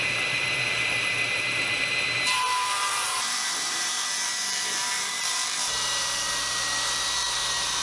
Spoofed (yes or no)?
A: yes